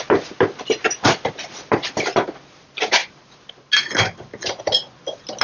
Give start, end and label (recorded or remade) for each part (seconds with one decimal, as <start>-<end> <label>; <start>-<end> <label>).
0.0-5.4 recorded